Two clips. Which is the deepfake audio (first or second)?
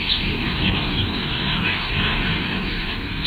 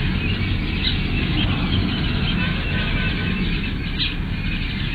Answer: first